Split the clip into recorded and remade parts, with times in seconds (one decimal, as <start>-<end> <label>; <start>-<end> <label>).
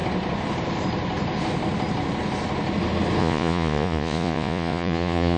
0.0-3.2 recorded; 3.2-5.4 remade